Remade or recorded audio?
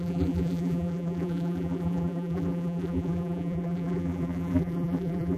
remade